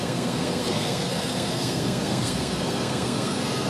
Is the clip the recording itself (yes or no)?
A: no